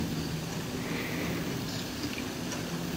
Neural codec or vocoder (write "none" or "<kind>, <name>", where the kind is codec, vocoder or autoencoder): none